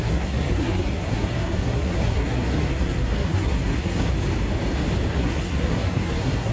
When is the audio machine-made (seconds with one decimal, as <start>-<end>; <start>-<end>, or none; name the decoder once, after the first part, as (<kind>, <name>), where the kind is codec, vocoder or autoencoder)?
0.0-4.1 (codec, SNAC); 5.1-6.5